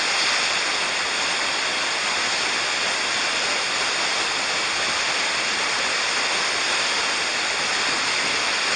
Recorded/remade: recorded